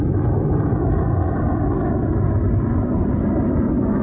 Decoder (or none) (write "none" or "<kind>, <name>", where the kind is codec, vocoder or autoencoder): none